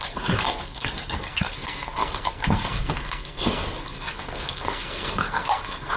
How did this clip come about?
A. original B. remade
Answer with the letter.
B